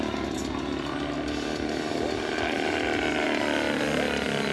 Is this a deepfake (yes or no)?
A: no